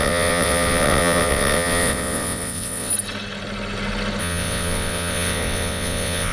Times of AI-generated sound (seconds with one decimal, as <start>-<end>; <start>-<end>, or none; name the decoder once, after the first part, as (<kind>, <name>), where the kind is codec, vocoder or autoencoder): 0.0-2.9 (vocoder, WaveNeXt); 4.2-6.3